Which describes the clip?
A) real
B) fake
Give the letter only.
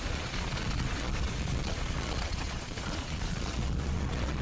B